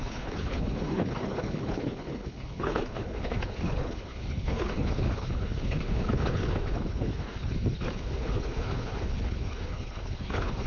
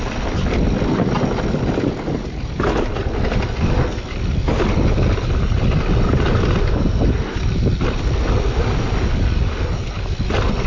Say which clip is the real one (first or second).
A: second